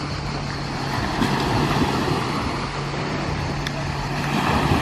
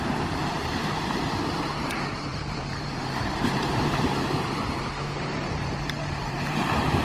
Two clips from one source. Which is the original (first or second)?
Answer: first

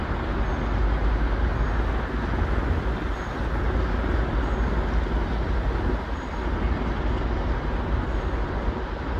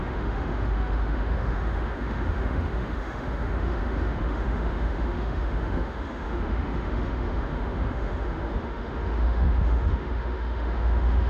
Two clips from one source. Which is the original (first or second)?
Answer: first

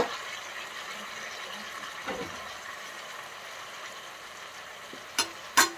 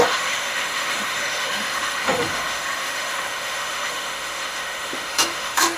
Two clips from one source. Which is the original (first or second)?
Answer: first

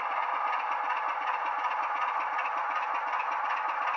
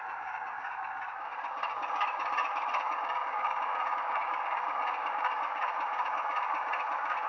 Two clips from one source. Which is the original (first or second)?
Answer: first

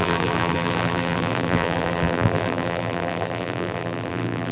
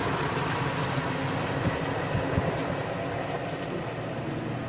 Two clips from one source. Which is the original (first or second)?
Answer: second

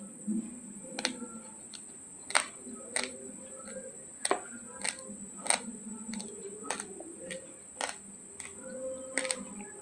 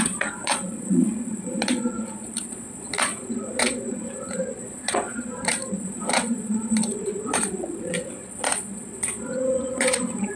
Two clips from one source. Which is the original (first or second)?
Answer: first